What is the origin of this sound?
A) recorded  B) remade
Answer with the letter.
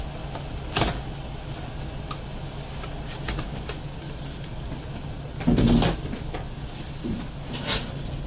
A